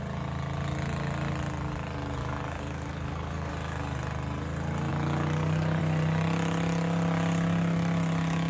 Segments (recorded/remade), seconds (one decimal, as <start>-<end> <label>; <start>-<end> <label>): 0.0-2.2 recorded; 2.2-3.5 remade; 3.5-4.9 recorded; 4.9-5.8 remade; 5.8-8.5 recorded